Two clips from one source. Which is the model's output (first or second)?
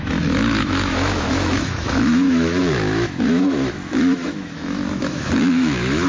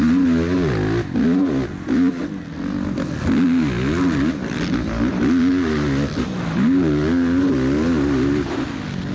first